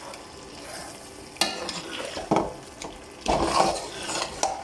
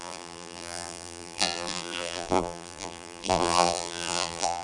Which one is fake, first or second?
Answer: second